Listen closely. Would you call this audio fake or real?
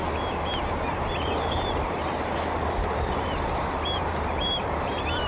fake